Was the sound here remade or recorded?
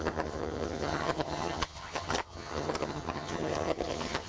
remade